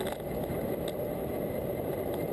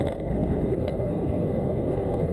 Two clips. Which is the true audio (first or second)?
first